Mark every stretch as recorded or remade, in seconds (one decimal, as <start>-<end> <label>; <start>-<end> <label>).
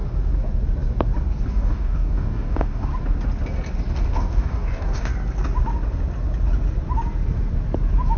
0.0-1.5 recorded; 1.5-2.9 remade; 2.9-4.1 recorded; 4.1-5.1 remade; 5.1-8.2 recorded